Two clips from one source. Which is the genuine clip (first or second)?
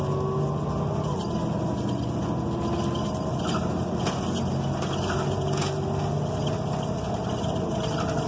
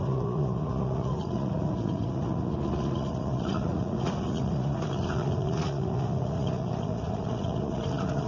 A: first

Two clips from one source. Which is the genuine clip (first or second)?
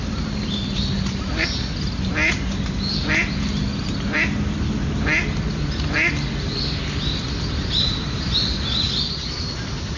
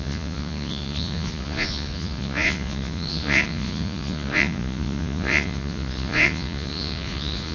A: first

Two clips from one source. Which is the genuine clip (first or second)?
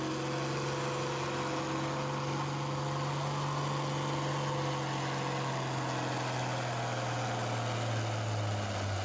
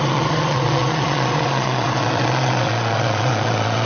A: first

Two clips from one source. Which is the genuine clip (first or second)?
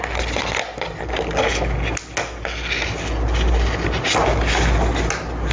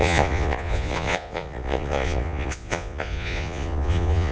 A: first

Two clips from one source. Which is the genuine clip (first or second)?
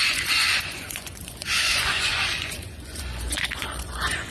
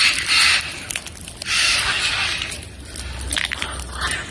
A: second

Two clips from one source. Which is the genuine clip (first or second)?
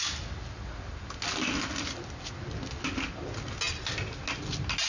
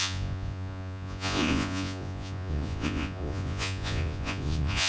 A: first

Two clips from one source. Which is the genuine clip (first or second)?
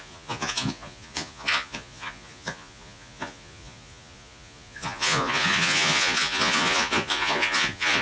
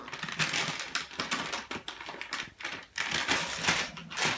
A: second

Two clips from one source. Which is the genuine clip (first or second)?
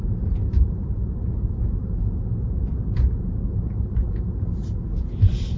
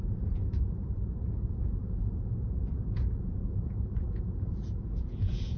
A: first